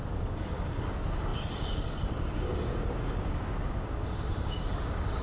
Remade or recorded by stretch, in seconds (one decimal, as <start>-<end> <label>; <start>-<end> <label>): 0.0-5.2 remade